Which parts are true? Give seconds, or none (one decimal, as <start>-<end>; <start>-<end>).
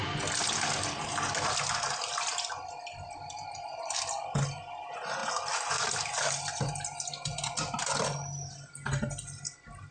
0.0-9.9